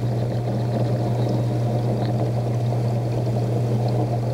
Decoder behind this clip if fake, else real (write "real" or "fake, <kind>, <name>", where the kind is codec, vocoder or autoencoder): real